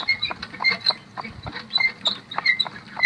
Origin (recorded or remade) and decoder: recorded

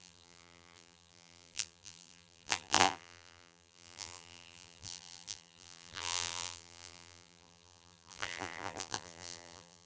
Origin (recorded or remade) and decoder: remade, vocoder, BigVGAN v2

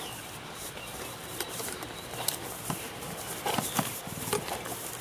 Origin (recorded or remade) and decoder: remade, vocoder, BigVGAN v2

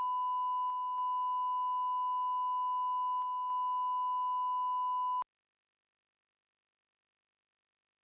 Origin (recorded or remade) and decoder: recorded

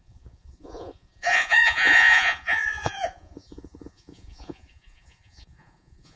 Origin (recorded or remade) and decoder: remade, vocoder, Vocos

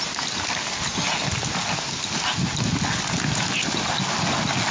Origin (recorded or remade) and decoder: recorded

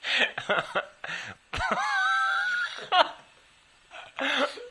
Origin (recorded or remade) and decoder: recorded